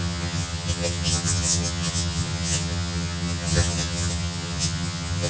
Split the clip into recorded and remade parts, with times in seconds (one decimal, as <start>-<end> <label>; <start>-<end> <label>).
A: 0.0-5.3 remade